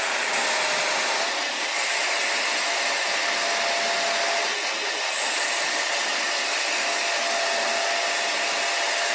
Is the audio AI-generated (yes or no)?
no